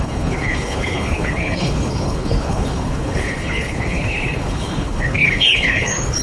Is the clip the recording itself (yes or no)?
no